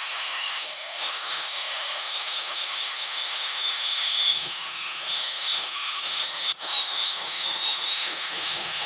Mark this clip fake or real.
fake